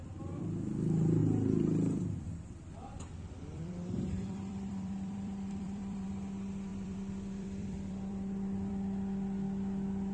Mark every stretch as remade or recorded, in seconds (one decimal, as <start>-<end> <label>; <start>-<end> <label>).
0.0-1.2 recorded; 1.2-6.1 remade; 6.1-6.7 recorded; 6.7-8.7 remade; 8.7-10.1 recorded